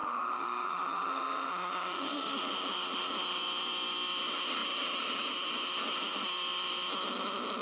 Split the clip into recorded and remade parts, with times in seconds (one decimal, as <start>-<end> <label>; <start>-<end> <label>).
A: 0.0-2.4 remade; 2.4-7.6 recorded